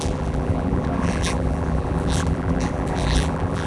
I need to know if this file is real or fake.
fake